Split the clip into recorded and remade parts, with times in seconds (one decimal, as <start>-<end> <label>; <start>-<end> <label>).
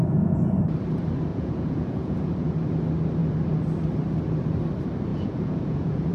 0.0-0.6 remade; 0.6-1.3 recorded; 1.3-2.5 remade; 2.5-5.1 recorded; 5.1-6.1 remade